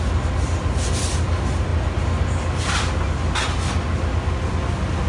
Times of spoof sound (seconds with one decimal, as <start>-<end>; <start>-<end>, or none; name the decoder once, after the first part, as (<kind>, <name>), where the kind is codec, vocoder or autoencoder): none